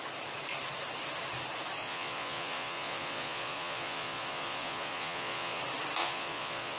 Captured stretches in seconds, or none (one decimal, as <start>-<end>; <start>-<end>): 0.0-1.8; 5.6-6.0